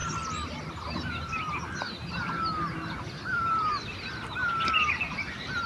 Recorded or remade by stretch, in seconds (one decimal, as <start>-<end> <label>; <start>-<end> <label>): 0.0-5.7 recorded